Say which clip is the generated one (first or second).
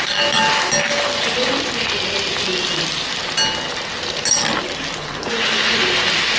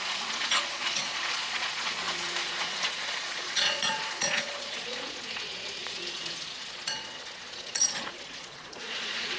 second